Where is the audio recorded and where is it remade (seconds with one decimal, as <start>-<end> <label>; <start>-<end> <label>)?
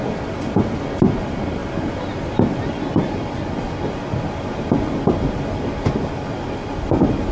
0.0-7.3 recorded